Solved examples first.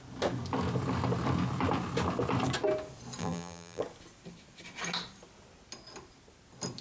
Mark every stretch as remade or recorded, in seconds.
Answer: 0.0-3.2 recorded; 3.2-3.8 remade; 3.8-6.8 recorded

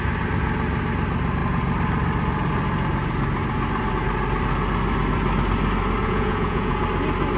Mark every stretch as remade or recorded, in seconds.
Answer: 0.0-6.0 recorded; 6.0-6.8 remade; 6.8-7.4 recorded

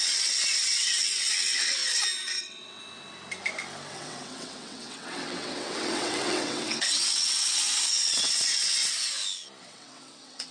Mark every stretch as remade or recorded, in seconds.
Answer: 0.0-1.8 remade; 1.8-2.4 recorded; 2.4-2.8 remade; 2.8-3.9 recorded; 3.9-8.8 remade; 8.8-9.6 recorded; 9.6-10.5 remade

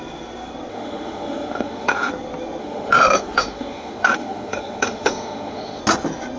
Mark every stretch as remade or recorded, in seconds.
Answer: 0.0-0.7 recorded; 0.7-2.1 remade; 2.1-2.6 recorded; 2.6-5.8 remade; 5.8-6.4 recorded

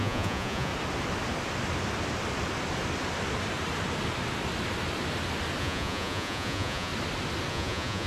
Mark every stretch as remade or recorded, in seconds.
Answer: 0.0-0.7 remade; 0.7-5.6 recorded; 5.6-6.9 remade; 6.9-7.5 recorded; 7.5-8.1 remade

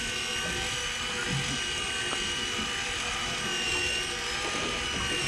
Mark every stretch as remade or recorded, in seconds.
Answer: 0.0-5.3 recorded

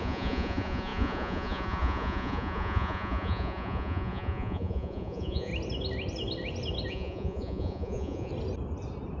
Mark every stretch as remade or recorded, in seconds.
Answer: 0.0-5.5 remade; 5.5-6.9 recorded; 6.9-8.3 remade; 8.3-9.2 recorded

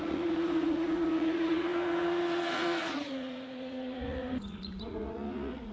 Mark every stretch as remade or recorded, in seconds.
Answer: 0.0-5.7 remade